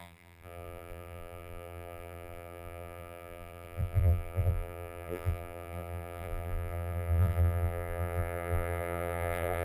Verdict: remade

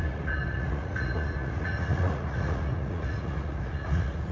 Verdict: remade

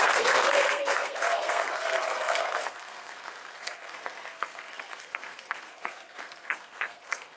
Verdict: remade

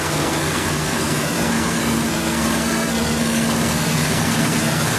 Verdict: remade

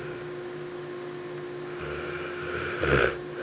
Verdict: recorded